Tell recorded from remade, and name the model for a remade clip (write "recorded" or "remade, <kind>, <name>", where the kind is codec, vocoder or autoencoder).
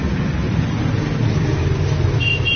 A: recorded